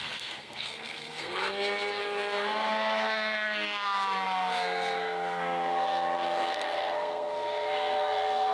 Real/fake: fake